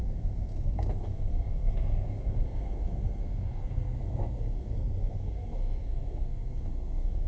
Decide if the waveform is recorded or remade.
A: remade